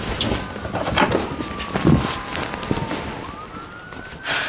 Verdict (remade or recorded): remade